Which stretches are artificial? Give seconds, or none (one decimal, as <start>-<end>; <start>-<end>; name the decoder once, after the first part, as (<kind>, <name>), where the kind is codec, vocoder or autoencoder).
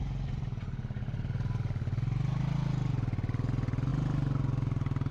none